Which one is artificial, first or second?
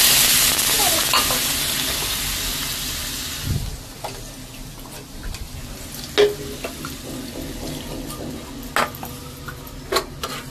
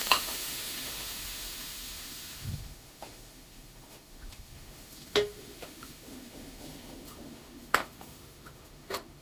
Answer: second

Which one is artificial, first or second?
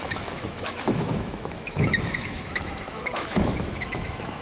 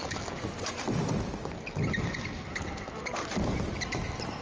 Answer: first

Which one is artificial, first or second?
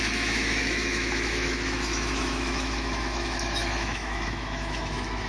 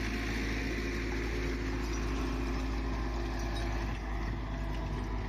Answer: first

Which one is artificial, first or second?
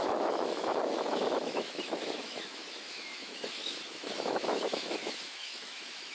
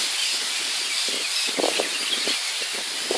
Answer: first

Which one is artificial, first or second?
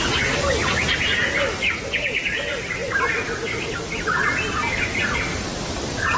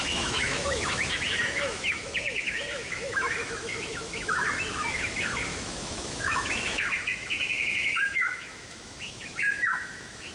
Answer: second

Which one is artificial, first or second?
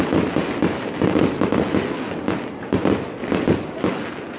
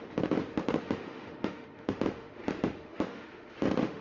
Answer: second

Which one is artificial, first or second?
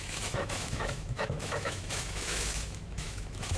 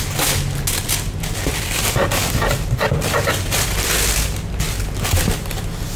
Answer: first